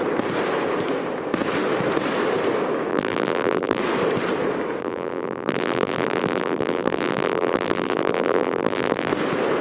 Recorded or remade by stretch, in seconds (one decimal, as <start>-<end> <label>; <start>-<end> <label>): 0.0-2.9 recorded; 2.9-3.8 remade; 3.8-4.8 recorded; 4.8-9.1 remade; 9.1-9.6 recorded